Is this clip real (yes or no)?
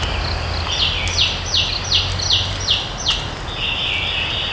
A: yes